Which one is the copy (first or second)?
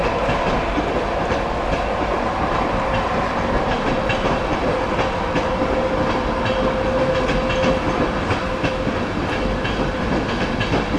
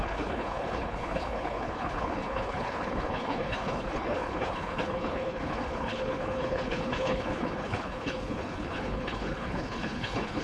second